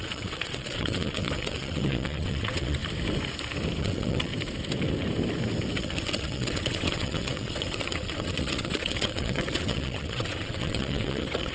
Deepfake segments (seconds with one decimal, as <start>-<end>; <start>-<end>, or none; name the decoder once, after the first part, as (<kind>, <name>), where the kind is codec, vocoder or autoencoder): 0.0-2.8 (vocoder, WaveNeXt); 3.8-4.3; 5.8-11.5